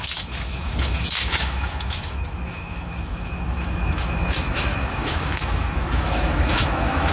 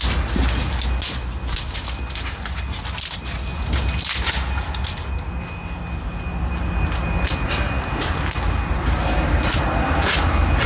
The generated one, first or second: first